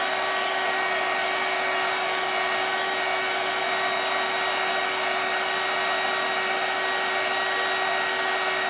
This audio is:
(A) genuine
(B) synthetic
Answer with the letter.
A